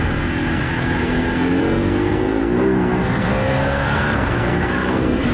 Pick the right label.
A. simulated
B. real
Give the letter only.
A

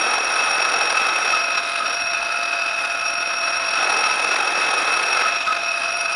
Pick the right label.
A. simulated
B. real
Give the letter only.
B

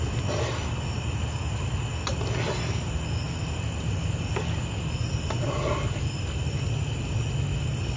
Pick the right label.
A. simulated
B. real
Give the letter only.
B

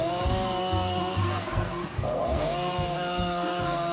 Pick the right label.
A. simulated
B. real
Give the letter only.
A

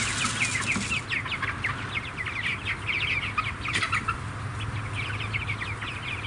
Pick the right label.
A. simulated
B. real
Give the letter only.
B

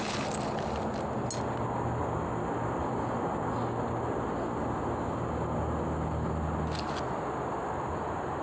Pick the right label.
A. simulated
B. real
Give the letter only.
B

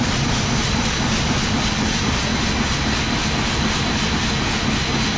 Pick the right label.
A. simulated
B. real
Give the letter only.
B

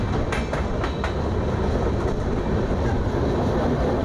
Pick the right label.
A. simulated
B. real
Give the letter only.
B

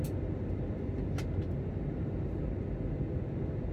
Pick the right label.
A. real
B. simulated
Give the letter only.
A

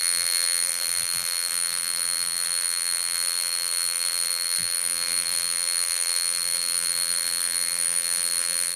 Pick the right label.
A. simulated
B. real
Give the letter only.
A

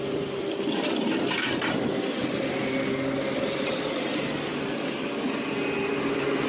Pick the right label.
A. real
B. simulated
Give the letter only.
A